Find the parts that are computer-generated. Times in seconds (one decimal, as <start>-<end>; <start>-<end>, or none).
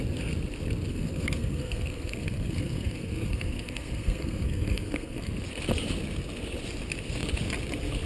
0.9-5.3